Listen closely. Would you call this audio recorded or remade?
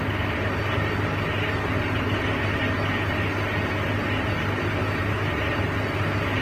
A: recorded